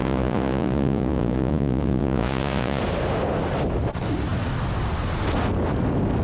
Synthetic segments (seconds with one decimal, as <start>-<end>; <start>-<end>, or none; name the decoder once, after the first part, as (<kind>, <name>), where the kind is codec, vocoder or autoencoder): 0.0-2.8 (vocoder, Vocos)